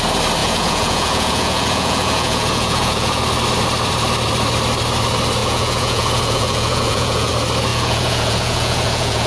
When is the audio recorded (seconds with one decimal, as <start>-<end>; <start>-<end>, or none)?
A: 0.0-0.4; 3.2-5.4; 7.3-7.7